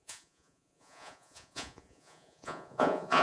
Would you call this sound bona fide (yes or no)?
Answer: no